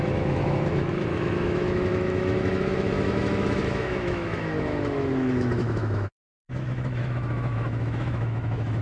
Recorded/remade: remade